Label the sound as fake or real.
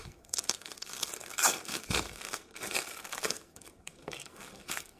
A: fake